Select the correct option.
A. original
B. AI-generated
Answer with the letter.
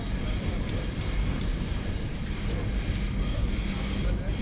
A